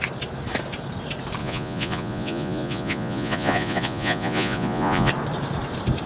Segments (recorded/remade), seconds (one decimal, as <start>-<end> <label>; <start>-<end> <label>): 0.0-1.4 recorded; 1.4-5.1 remade; 5.1-6.1 recorded